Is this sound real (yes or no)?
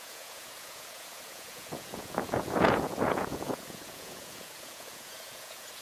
no